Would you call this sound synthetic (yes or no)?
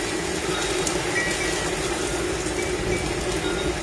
no